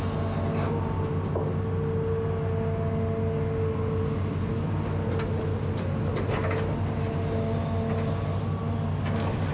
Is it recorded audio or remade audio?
recorded